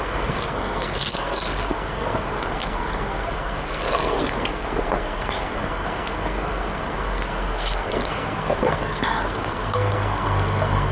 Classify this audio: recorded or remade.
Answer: remade